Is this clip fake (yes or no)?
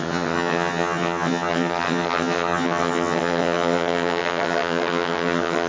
yes